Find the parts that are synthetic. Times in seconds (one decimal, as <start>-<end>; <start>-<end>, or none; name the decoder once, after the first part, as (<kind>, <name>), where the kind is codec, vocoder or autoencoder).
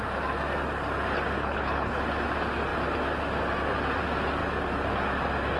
1.4-2.0 (codec, HILCodec)